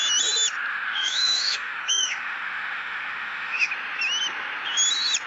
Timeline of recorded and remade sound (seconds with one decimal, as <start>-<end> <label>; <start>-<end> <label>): 0.0-0.7 recorded; 0.7-3.7 remade; 3.7-5.3 recorded